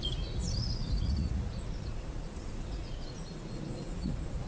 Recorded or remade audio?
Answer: remade